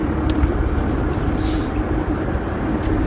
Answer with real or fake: real